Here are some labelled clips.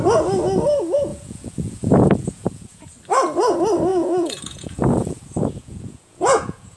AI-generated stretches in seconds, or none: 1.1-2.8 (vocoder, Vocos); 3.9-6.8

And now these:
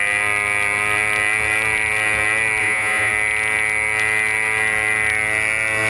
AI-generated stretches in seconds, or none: 2.6-3.1 (vocoder, Vocos)

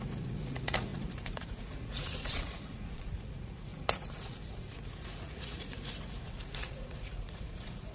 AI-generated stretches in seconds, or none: 0.0-7.9 (vocoder, Vocos)

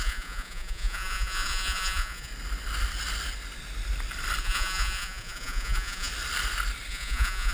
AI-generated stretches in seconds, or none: 0.0-2.3 (vocoder, Vocos); 4.4-6.1; 6.9-7.5

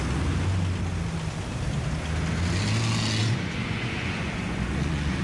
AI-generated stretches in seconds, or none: 3.2-5.2 (vocoder, Vocos)

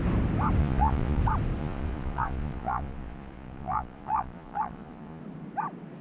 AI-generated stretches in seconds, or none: 0.6-1.2 (vocoder, Vocos); 1.6-5.2

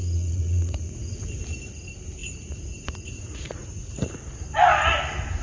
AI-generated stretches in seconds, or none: 0.0-1.4 (vocoder, Vocos); 2.2-4.2